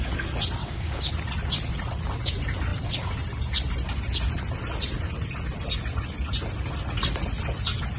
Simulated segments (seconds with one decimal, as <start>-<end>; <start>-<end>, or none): 0.6-1.1